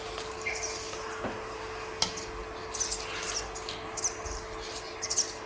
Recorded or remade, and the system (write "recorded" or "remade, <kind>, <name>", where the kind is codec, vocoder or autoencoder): recorded